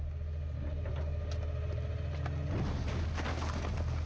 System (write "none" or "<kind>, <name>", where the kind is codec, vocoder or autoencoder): none